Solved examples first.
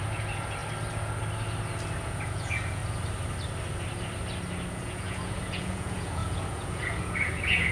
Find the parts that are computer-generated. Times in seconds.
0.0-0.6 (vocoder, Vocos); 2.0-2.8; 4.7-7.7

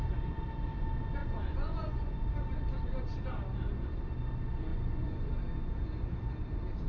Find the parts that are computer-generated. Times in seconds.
1.2-2.2 (vocoder, Vocos); 4.7-5.3

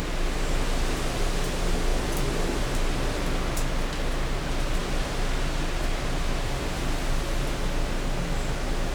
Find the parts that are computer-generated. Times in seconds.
none

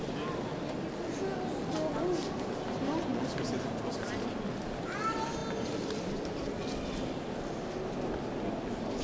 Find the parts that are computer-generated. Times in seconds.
none

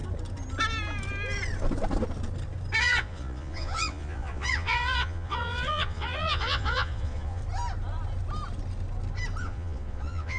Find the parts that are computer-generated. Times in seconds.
2.8-7.4 (vocoder, Vocos); 9.4-10.4